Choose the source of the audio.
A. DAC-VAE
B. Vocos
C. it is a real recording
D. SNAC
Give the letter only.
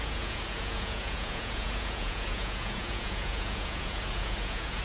B